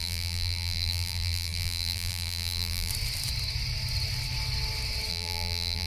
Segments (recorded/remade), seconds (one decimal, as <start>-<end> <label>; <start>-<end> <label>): 0.0-2.9 remade; 2.9-5.1 recorded; 5.1-5.9 remade